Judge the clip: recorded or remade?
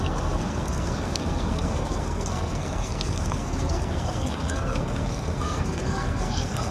remade